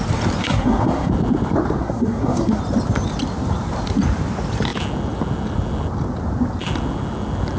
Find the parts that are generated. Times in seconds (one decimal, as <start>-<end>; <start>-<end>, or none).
0.4-1.1; 1.8-2.6